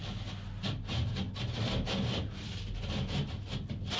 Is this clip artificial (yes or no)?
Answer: no